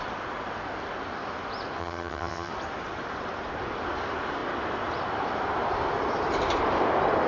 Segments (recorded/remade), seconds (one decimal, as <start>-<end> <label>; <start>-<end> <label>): 0.0-1.8 recorded; 1.8-2.5 remade; 2.5-7.3 recorded